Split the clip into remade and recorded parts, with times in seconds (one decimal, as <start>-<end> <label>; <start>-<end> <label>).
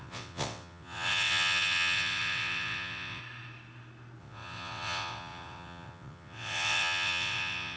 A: 0.0-3.2 remade; 3.2-4.2 recorded; 4.2-7.8 remade